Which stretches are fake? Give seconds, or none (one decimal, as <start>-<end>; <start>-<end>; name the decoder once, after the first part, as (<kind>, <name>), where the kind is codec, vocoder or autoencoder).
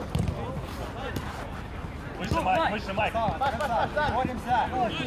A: 2.5-3.0 (autoencoder, DAC-VAE)